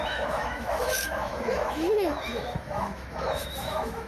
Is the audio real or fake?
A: fake